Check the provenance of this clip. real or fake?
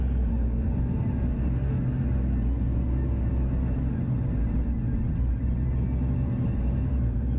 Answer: real